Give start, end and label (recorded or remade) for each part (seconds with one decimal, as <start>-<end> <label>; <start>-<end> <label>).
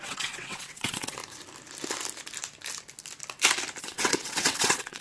0.0-1.2 remade; 1.2-3.8 recorded; 3.8-5.0 remade